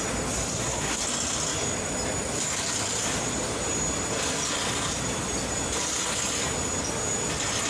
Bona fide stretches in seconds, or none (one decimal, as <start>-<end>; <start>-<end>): 0.0-0.5; 1.0-7.7